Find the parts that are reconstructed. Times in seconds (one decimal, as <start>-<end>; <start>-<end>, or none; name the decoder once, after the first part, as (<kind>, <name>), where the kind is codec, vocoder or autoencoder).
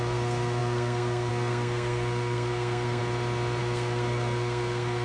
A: 0.0-3.0 (codec, SNAC); 3.6-5.0